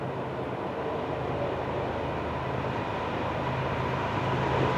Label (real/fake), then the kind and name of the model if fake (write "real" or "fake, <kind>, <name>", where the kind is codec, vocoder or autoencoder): real